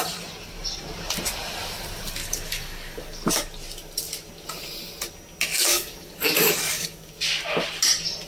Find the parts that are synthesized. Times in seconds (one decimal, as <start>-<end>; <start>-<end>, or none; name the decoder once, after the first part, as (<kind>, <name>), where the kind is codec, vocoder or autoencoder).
2.2-3.3 (codec, DAC); 5.5-7.1